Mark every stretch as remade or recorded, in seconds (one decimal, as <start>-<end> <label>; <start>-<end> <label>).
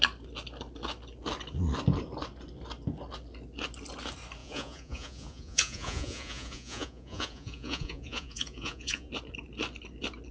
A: 0.0-4.4 recorded; 4.4-9.1 remade; 9.1-10.3 recorded